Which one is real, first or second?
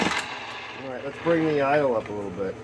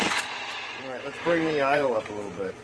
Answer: first